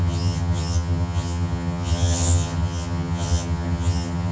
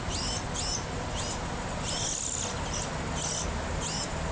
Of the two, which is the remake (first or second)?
first